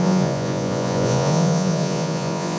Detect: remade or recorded remade